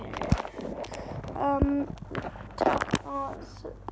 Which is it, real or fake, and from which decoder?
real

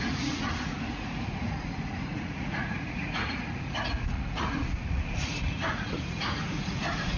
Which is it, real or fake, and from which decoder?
fake, vocoder, Vocos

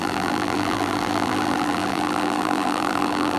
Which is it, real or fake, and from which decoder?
fake, vocoder, BigVGAN v2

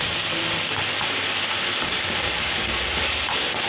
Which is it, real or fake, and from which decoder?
real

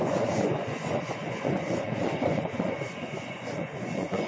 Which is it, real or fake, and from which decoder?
fake, vocoder, Vocos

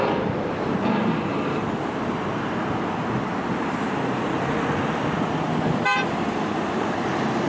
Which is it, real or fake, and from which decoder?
real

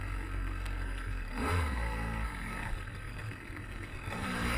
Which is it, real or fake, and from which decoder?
fake, codec, SNAC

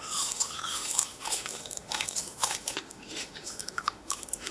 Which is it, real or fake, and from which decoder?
fake, autoencoder, DAC-VAE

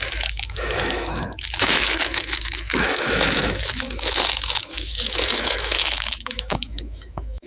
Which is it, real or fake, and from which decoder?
fake, autoencoder, DAC-VAE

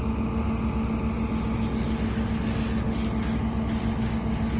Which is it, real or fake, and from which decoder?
real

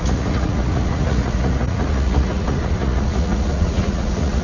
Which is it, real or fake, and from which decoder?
fake, vocoder, Vocos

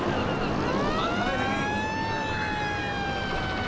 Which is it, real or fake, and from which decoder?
real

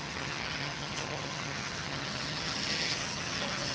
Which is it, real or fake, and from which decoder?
fake, vocoder, HiFi-GAN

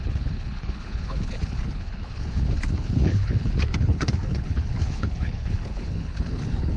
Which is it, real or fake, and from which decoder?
fake, codec, HILCodec